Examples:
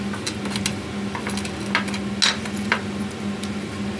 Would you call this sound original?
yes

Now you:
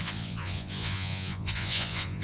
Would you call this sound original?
no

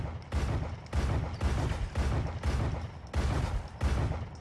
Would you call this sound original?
yes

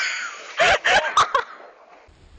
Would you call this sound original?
yes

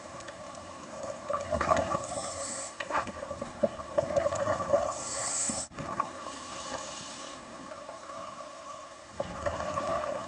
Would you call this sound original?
no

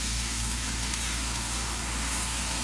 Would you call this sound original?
no